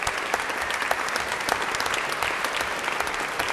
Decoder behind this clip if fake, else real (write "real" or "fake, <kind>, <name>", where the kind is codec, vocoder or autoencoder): real